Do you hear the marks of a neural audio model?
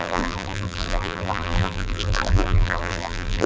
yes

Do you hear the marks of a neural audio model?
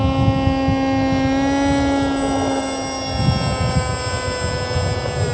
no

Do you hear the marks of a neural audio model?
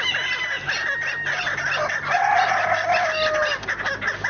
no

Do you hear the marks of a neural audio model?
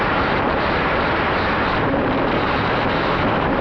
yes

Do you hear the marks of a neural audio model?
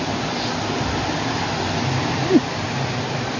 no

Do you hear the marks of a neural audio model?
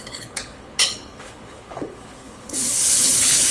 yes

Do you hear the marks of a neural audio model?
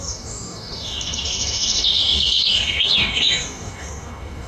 yes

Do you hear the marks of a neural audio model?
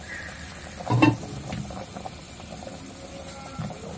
no